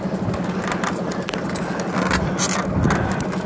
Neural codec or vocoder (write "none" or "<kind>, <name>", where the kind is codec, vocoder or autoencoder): none